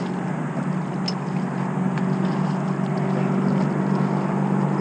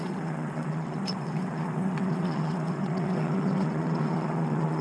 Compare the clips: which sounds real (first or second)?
first